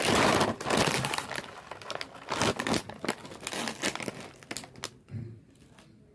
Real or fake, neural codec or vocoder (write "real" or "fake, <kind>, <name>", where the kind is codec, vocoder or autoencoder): real